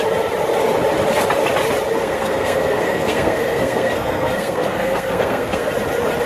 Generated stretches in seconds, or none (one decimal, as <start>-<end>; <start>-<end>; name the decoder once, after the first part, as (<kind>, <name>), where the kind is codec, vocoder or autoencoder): 2.0-5.7 (codec, SNAC)